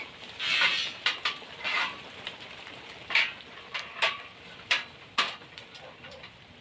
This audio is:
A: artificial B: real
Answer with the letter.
A